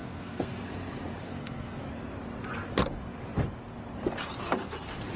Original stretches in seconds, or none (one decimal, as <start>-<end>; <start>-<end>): 0.6-1.2; 1.8-5.2